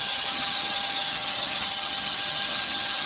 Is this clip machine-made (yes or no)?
yes